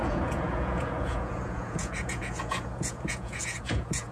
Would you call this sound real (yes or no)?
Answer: no